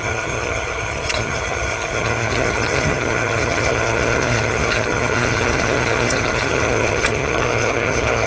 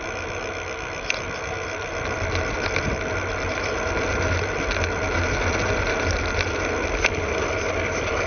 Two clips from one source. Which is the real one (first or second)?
second